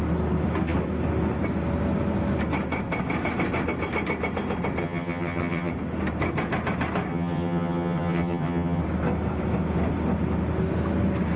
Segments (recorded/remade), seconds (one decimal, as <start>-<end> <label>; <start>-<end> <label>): 0.0-4.8 recorded; 4.8-5.7 remade; 5.7-7.1 recorded; 7.1-8.8 remade; 8.8-11.4 recorded